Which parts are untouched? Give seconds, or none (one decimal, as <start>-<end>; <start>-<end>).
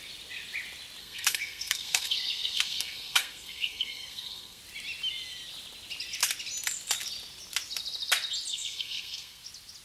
0.0-1.0; 4.6-8.5; 9.4-9.8